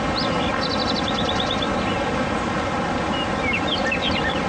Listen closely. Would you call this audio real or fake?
real